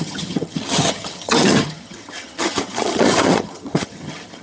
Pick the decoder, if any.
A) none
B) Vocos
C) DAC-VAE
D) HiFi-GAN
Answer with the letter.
D